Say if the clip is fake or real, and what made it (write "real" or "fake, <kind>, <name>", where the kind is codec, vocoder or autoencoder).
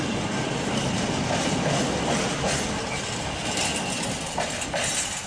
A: real